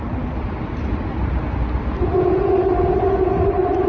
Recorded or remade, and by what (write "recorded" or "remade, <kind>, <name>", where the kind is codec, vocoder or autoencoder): recorded